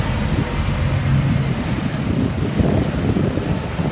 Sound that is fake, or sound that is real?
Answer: real